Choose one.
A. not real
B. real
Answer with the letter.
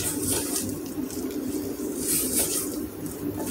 B